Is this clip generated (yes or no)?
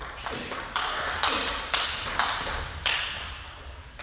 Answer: no